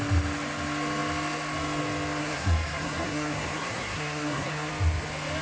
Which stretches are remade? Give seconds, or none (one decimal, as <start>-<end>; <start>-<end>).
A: 2.2-4.7

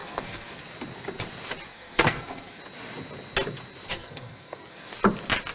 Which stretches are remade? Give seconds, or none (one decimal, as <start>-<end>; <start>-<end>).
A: 0.0-0.6; 1.7-2.6; 3.9-4.9

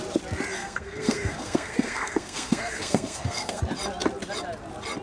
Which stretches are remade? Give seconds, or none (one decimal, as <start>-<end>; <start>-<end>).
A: 0.6-3.6

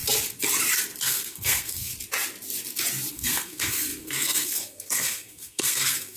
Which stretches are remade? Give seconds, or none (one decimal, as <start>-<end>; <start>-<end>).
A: 1.0-1.9; 3.1-6.2